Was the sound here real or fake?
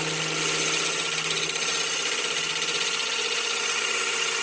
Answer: real